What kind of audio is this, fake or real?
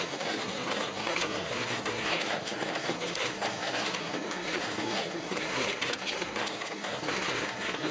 fake